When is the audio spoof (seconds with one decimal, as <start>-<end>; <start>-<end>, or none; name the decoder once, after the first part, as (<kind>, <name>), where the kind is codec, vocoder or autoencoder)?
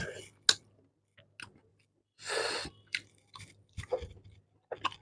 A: 1.7-5.0 (vocoder, BigVGAN v2)